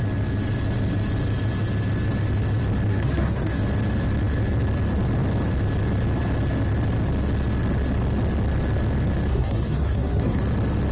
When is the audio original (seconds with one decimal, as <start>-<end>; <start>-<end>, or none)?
0.0-2.9; 3.6-9.3; 10.4-10.9

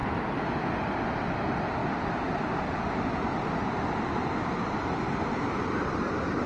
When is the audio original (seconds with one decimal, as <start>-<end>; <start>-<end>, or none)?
0.0-6.5